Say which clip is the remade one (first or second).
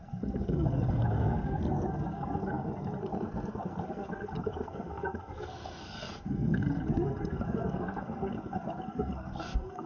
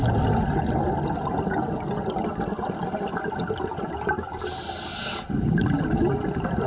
first